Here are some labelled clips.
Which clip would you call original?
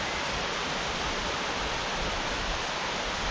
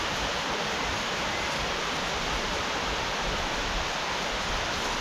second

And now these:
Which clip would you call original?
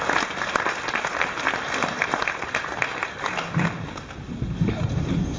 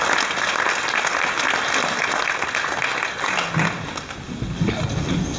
second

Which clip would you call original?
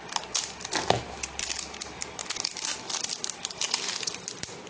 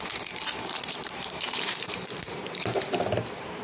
first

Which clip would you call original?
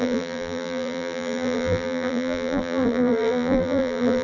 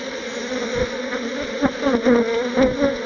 second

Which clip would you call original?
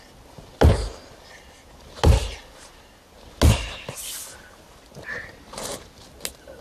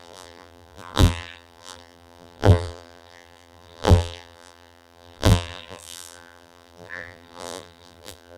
first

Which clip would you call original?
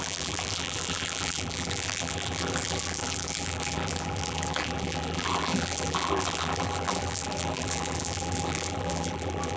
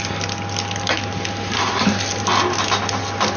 second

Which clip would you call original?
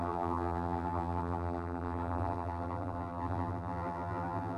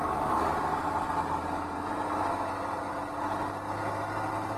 second